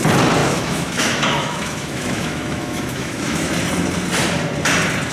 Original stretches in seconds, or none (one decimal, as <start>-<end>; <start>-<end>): 0.0-0.4; 3.5-5.1